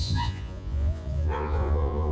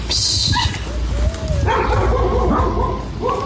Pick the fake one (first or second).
first